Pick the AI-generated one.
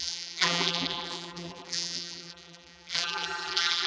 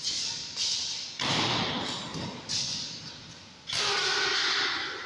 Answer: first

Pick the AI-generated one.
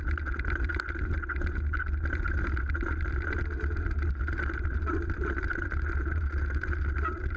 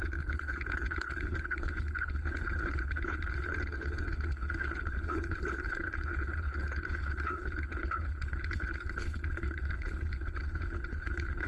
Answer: second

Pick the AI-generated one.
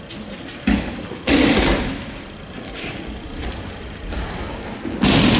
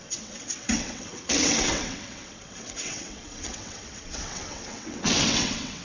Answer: second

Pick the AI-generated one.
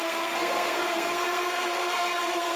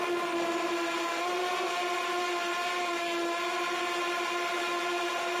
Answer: first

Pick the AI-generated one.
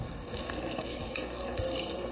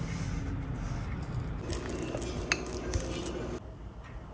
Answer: first